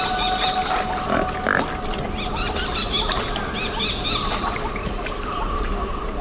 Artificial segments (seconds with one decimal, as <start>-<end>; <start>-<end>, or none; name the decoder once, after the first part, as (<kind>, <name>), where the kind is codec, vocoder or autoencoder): 4.8-6.2 (vocoder, BigVGAN v2)